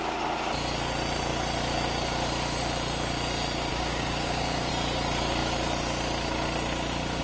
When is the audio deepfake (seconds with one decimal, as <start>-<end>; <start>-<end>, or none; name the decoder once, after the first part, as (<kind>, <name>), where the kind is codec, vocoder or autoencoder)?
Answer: 3.7-4.7 (codec, DAC)